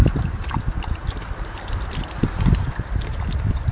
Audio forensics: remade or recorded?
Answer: recorded